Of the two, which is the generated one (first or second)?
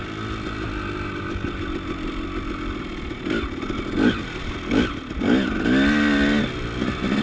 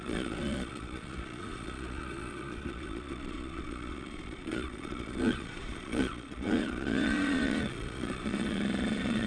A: second